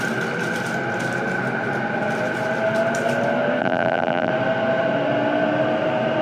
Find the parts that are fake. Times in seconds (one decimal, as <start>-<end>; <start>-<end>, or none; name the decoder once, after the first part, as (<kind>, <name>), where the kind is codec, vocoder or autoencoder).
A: 3.6-4.3 (vocoder, BigVGAN v2)